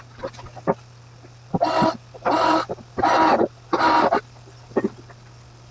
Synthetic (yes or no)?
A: yes